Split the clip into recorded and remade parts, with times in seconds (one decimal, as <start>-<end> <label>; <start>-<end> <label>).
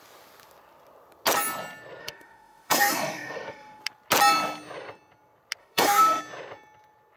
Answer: 0.0-2.0 recorded; 2.0-3.8 remade; 3.8-5.6 recorded; 5.6-6.2 remade; 6.2-7.2 recorded